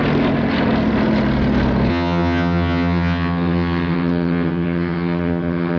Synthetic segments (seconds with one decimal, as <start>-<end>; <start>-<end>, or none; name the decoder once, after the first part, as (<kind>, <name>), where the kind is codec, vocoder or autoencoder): 1.9-5.8 (vocoder, HiFi-GAN)